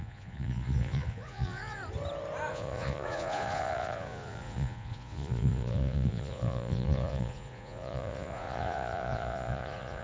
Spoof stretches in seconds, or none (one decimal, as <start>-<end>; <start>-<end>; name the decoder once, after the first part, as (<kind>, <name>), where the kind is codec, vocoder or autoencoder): 0.0-1.8 (vocoder, Vocos); 2.5-10.0